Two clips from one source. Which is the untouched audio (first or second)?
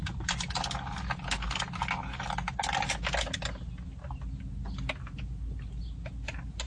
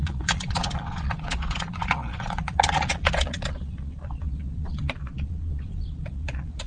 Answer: first